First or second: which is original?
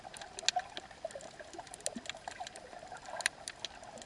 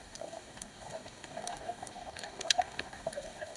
first